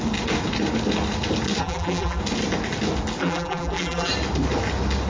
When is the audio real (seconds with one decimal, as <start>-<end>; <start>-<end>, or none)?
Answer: 0.0-1.6; 2.2-3.2; 4.1-5.1